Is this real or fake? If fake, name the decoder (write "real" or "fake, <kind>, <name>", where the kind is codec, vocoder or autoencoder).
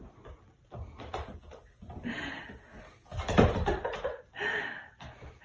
real